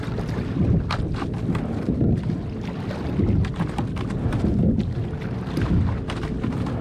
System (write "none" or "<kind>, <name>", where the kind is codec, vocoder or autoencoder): none